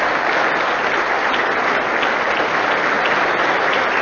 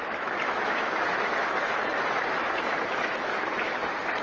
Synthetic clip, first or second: second